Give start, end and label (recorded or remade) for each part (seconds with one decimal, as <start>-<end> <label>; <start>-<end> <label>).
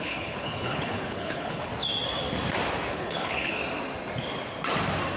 0.0-1.7 remade; 1.7-2.9 recorded; 2.9-3.6 remade; 3.6-5.2 recorded